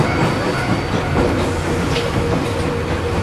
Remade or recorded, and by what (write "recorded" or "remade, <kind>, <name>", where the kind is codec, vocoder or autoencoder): recorded